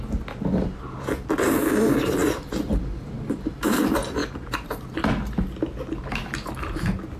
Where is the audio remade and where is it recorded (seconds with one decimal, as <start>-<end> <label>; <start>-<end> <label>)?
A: 0.0-2.2 recorded; 2.2-3.8 remade; 3.8-4.2 recorded; 4.2-4.8 remade; 4.8-7.2 recorded